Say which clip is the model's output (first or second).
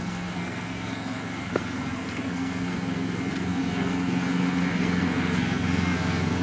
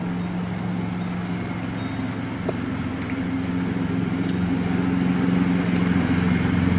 first